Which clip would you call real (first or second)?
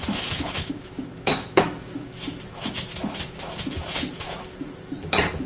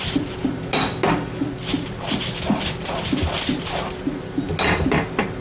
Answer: second